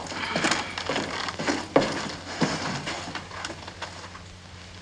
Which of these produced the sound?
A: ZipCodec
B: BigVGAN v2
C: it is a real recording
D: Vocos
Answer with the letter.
C